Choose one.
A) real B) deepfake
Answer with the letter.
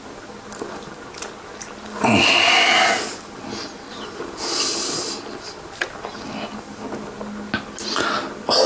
A